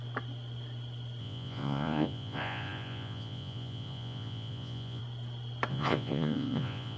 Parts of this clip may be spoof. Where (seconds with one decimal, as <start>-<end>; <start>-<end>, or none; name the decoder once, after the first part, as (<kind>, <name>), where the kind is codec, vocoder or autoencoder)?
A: 1.2-5.0 (vocoder, Vocos); 5.7-7.0